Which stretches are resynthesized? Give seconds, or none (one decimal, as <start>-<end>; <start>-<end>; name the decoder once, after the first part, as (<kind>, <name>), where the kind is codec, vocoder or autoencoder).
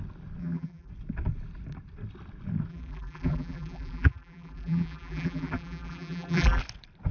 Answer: 0.4-0.9 (vocoder, BigVGAN v2); 2.7-6.6